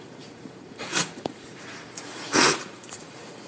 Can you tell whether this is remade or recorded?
remade